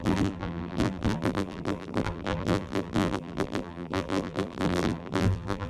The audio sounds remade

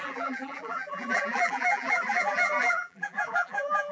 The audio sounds remade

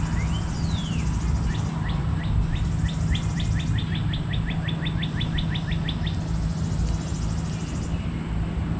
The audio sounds recorded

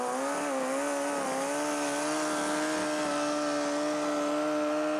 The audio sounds recorded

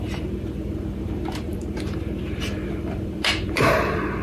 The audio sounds remade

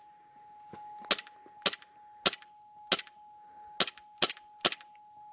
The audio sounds recorded